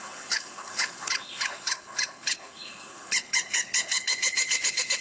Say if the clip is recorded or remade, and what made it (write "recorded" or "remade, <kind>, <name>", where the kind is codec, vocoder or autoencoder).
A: remade, codec, HILCodec